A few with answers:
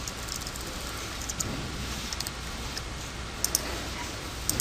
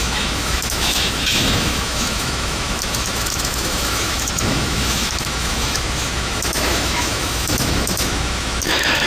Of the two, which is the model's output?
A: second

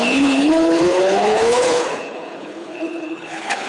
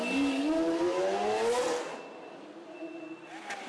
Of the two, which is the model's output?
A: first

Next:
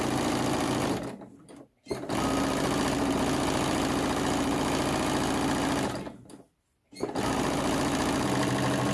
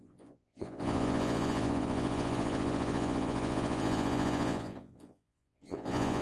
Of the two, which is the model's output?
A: second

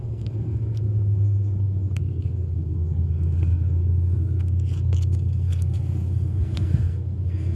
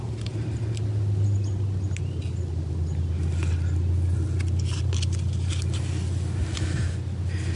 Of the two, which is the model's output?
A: first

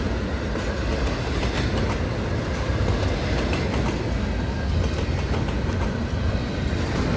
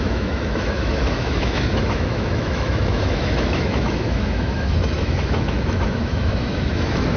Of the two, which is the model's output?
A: second